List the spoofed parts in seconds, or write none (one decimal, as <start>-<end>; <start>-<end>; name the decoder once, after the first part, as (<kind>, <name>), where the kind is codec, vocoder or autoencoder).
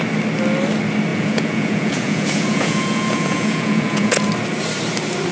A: 1.1-4.3 (vocoder, Vocos)